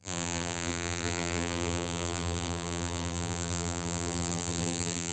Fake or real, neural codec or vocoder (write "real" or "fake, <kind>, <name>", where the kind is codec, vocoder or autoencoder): fake, vocoder, BigVGAN v2